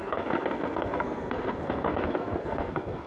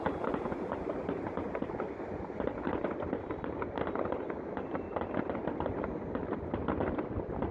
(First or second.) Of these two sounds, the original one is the second